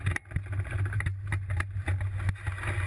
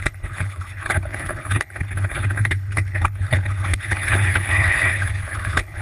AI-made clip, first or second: second